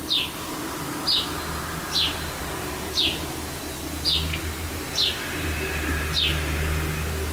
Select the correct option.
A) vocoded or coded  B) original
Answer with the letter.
B